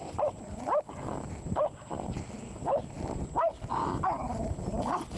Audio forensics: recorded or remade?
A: recorded